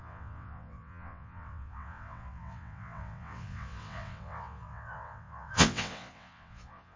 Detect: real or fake fake